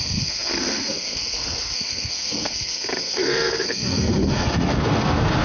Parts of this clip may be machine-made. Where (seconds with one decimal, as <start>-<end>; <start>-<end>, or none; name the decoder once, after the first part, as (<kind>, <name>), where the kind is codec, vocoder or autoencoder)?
0.0-5.4 (codec, SNAC)